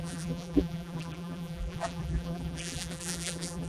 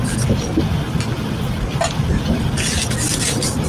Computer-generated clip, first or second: first